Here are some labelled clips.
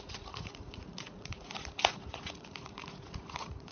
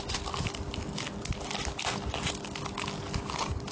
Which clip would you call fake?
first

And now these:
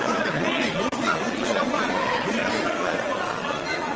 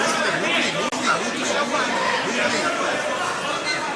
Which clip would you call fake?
first